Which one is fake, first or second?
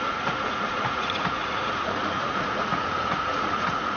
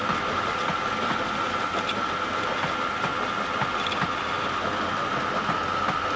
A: first